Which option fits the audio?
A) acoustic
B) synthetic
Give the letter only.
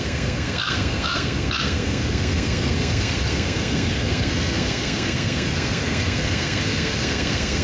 B